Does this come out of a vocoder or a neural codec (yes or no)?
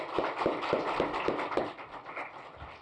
no